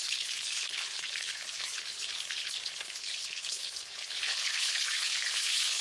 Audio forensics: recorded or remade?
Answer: remade